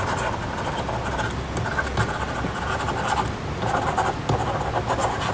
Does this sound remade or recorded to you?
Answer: recorded